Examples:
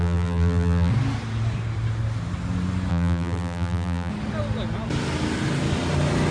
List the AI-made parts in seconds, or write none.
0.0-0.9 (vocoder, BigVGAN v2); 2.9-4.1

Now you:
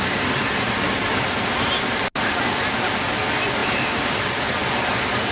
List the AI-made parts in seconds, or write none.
3.6-4.7 (vocoder, BigVGAN v2)

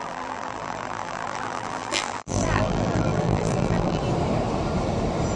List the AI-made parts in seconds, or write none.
0.0-4.0 (vocoder, BigVGAN v2)